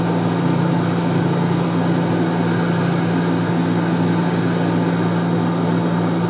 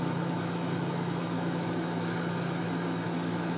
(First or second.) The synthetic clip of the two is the second